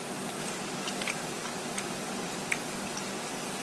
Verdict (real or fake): real